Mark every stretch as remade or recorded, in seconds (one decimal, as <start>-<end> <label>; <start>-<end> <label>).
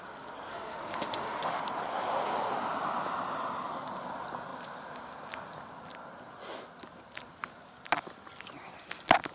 0.0-0.5 recorded; 0.5-1.6 remade; 1.6-9.3 recorded